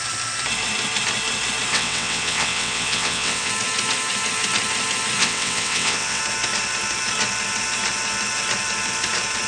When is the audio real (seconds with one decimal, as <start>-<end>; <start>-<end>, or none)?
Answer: 0.0-1.7; 3.5-5.2; 6.2-9.5